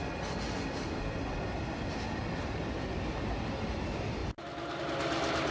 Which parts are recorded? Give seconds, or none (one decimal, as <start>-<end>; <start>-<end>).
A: 0.0-5.5